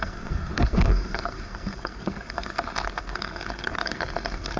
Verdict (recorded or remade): remade